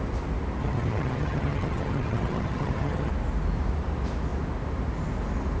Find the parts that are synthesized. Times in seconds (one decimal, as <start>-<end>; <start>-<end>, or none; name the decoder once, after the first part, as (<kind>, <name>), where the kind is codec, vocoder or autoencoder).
0.6-3.1 (vocoder, HiFi-GAN)